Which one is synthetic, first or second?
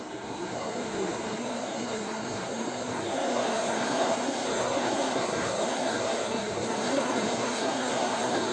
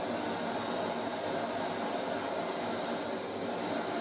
first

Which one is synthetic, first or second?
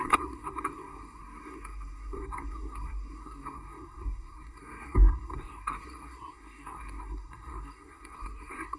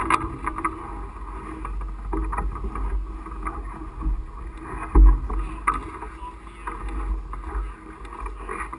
first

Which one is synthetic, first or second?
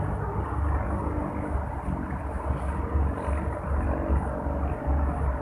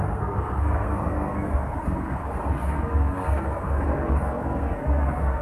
second